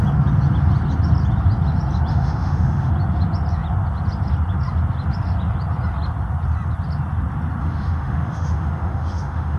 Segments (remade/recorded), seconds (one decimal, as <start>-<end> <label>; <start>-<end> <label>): 0.0-2.1 recorded; 2.1-2.9 remade; 2.9-7.6 recorded; 7.6-9.6 remade